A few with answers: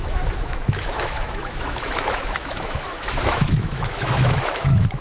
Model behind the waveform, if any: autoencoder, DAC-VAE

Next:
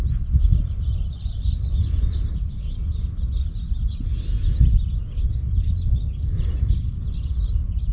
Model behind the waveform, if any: none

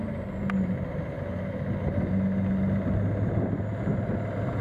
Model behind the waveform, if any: none